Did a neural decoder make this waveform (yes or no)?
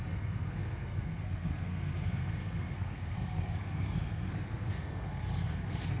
yes